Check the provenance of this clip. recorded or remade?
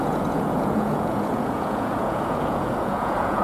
remade